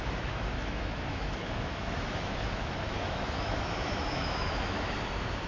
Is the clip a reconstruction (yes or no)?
yes